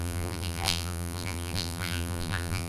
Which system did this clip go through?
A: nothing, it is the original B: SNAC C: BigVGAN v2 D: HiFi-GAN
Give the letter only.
C